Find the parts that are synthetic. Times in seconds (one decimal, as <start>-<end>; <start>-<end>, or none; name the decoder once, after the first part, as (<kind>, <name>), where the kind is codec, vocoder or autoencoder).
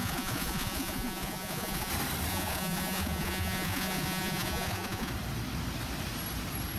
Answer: 0.0-1.9 (vocoder, Vocos); 2.3-5.1